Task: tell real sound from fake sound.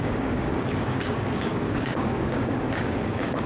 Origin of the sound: fake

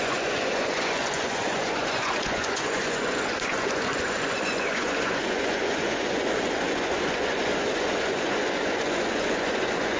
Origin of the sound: fake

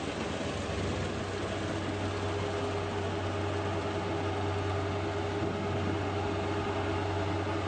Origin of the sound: real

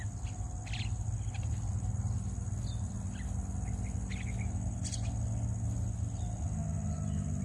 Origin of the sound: real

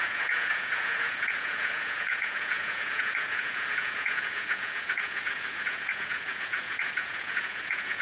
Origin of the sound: fake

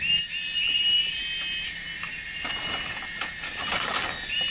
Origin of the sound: real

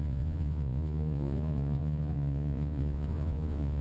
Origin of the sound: fake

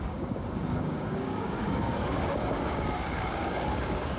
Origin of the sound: fake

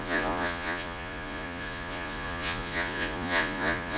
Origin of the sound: fake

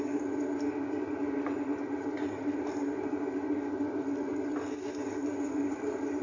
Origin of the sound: real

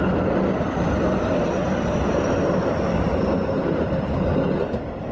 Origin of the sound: real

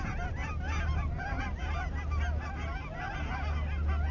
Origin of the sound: real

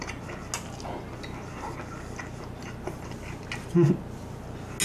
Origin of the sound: real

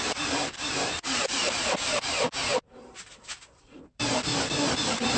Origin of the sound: fake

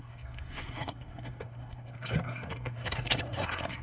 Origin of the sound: fake